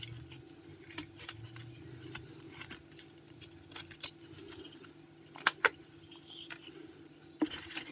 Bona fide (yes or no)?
yes